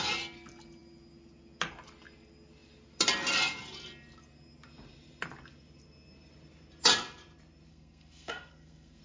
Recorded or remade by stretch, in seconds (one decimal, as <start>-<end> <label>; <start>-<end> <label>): 0.0-7.7 recorded; 7.7-9.0 remade